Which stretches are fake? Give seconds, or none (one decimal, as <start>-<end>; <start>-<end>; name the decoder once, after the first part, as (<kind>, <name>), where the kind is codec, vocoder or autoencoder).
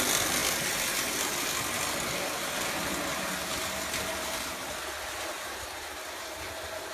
none